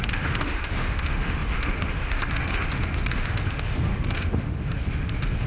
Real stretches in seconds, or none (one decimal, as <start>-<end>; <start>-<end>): none